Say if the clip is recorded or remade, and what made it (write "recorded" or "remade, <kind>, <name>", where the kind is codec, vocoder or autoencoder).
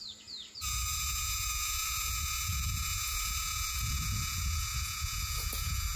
remade, vocoder, Vocos